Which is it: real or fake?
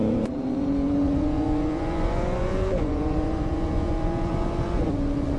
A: fake